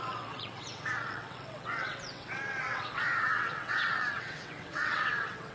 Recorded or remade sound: remade